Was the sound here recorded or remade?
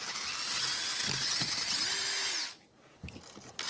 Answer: recorded